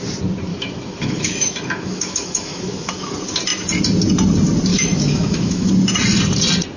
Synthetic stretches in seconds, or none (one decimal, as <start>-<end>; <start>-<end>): 0.5-3.1; 4.7-5.7